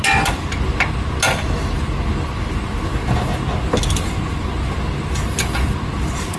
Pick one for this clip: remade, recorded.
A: recorded